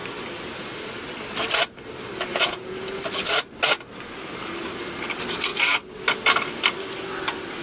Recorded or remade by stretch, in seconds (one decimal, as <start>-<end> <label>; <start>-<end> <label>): 0.0-2.3 recorded; 2.3-3.0 remade; 3.0-7.6 recorded